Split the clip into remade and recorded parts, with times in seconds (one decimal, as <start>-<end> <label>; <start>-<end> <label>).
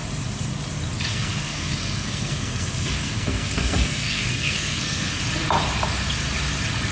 0.0-1.1 recorded; 1.1-5.2 remade; 5.2-6.9 recorded